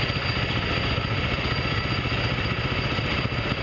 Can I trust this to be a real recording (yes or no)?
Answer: yes